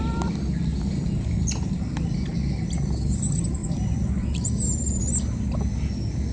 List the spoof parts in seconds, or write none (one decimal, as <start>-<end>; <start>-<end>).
0.7-1.7; 3.6-5.1